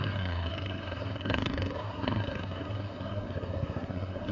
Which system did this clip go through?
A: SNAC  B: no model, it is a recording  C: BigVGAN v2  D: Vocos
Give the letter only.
A